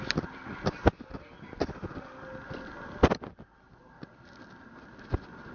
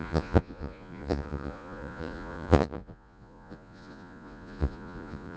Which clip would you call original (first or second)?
first